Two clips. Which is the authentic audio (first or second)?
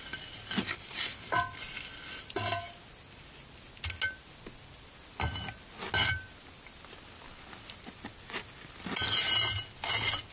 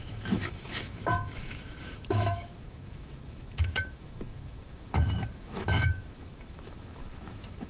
first